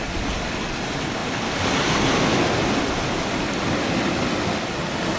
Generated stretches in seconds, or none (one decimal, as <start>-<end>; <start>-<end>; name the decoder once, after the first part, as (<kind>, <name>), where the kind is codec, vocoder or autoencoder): none